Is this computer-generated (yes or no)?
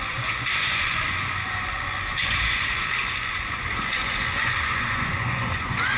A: yes